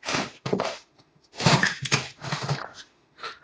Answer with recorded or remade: remade